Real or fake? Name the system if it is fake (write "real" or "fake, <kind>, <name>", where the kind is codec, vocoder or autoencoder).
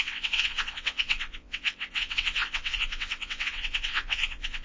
fake, vocoder, WaveNeXt